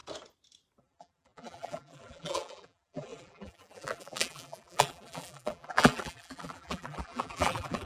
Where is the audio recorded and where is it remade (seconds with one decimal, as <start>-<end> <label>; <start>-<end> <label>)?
0.0-0.8 recorded; 0.8-7.9 remade